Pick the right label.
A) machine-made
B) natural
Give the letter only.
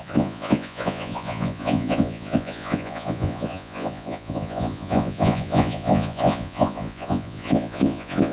A